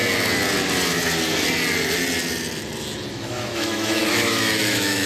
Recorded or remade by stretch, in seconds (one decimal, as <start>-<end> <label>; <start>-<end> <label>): 0.0-3.1 recorded; 3.1-5.1 remade